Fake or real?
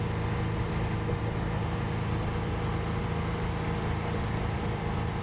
real